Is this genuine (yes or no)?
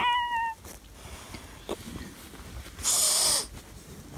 yes